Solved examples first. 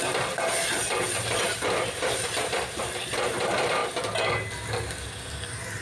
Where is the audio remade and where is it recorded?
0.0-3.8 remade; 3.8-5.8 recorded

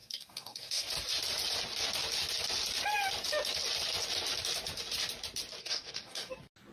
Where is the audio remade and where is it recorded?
0.0-0.9 remade; 0.9-5.6 recorded; 5.6-6.3 remade; 6.3-6.7 recorded

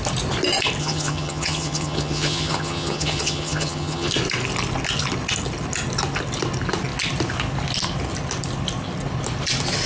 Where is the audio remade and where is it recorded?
0.0-0.8 recorded; 0.8-4.1 remade; 4.1-9.9 recorded

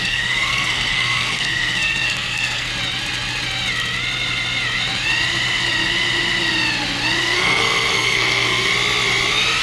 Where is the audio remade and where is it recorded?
0.0-2.7 remade; 2.7-7.2 recorded; 7.2-8.7 remade; 8.7-9.6 recorded

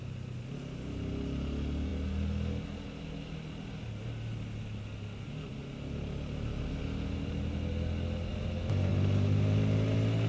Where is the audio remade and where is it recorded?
0.0-10.3 recorded

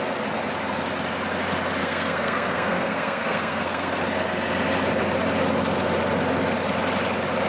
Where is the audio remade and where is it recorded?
0.0-1.8 recorded; 1.8-4.0 remade; 4.0-7.5 recorded

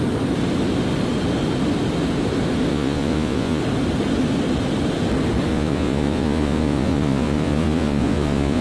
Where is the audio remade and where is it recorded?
0.0-2.7 recorded; 2.7-3.6 remade; 3.6-5.5 recorded; 5.5-8.6 remade

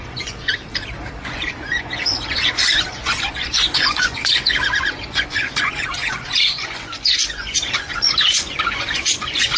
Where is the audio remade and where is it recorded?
0.0-0.5 remade; 0.5-1.2 recorded; 1.2-9.6 remade